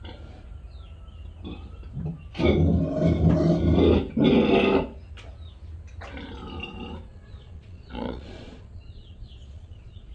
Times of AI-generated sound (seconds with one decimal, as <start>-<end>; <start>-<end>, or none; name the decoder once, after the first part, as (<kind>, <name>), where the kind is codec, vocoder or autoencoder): 7.1-10.1 (vocoder, Vocos)